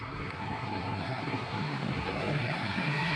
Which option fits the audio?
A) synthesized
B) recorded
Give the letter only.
A